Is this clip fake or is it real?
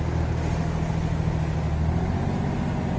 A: real